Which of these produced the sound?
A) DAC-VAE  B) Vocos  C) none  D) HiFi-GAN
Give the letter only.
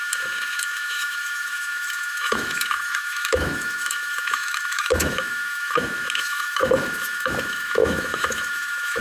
A